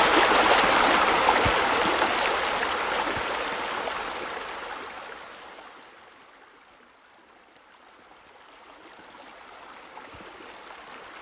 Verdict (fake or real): real